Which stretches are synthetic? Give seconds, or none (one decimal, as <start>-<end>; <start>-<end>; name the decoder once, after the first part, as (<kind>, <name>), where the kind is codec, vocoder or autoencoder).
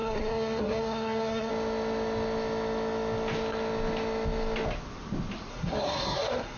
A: 0.0-1.5 (codec, SNAC); 5.5-6.6